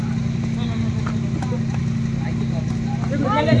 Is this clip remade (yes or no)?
no